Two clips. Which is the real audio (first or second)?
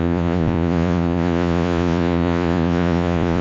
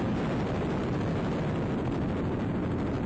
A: second